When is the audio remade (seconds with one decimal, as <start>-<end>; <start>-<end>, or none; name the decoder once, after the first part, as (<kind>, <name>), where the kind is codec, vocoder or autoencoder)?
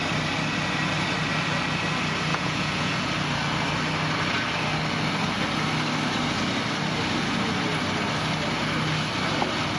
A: 2.3-3.1 (vocoder, Vocos)